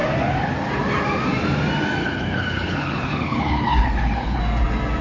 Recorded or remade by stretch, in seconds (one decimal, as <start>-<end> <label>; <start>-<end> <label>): 0.0-2.0 recorded; 2.0-4.4 remade; 4.4-5.0 recorded